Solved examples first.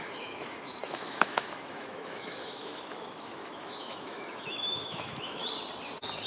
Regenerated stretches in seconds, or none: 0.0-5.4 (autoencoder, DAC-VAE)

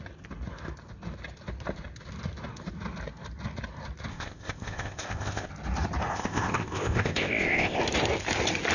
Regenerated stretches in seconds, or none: 4.1-5.5 (codec, ZipCodec); 6.1-7.8

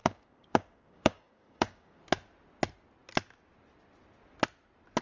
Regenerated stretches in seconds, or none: 0.0-2.0 (codec, DAC)

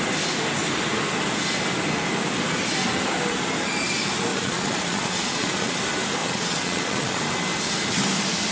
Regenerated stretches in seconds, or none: 4.3-5.8 (vocoder, Vocos); 6.2-7.2